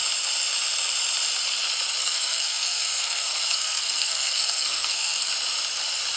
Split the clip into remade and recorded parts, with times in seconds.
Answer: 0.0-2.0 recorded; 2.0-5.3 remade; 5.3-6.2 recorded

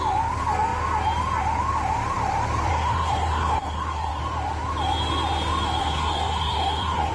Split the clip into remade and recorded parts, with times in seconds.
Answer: 0.0-2.7 recorded; 2.7-4.2 remade; 4.2-5.8 recorded; 5.8-7.1 remade

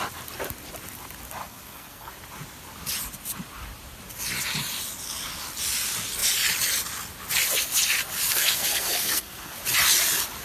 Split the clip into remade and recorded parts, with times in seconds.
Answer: 0.0-1.4 recorded; 1.4-2.1 remade; 2.1-8.3 recorded; 8.3-9.6 remade; 9.6-10.4 recorded

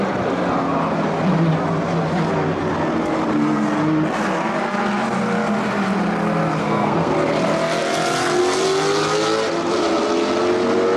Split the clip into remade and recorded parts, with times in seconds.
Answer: 0.0-6.6 recorded; 6.6-7.1 remade; 7.1-11.0 recorded